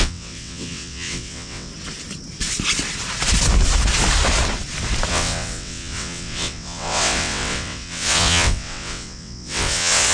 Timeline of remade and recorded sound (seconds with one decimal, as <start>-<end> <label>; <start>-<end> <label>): 0.0-1.7 remade; 1.7-5.1 recorded; 5.1-10.1 remade